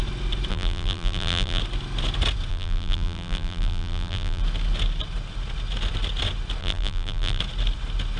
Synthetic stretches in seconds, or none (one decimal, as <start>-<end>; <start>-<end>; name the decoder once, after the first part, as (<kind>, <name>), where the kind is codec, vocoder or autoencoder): 0.5-1.6 (vocoder, BigVGAN v2); 2.5-4.4; 6.6-7.4